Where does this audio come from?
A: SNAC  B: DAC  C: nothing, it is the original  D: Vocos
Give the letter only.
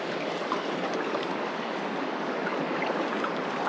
B